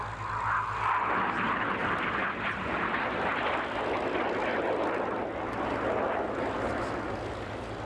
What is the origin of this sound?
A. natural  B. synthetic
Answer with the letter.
A